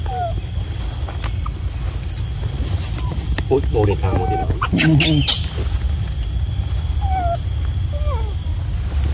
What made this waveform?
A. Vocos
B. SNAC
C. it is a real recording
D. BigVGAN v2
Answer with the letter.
C